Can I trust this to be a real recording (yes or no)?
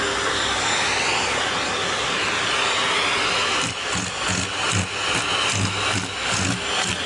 yes